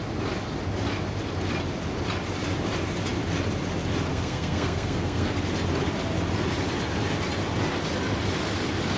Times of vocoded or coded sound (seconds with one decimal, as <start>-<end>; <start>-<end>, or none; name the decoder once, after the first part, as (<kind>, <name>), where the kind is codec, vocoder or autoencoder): 4.1-5.3 (codec, SNAC)